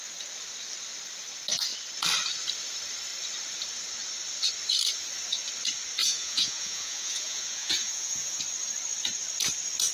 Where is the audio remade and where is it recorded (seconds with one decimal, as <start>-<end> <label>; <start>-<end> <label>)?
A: 0.0-6.0 recorded; 6.0-8.4 remade; 8.4-9.9 recorded